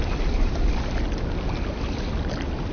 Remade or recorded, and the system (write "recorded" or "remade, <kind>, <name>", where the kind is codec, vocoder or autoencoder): recorded